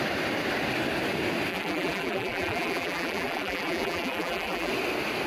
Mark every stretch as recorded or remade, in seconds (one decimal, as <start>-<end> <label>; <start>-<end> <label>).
0.0-1.5 recorded; 1.5-4.7 remade; 4.7-5.3 recorded